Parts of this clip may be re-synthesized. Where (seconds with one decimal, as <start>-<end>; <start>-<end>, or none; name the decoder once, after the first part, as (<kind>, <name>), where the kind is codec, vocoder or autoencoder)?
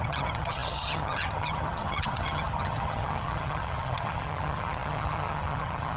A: 0.0-6.0 (vocoder, HiFi-GAN)